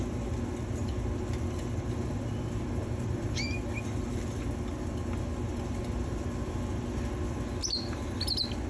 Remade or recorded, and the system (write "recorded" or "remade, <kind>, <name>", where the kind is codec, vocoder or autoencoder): recorded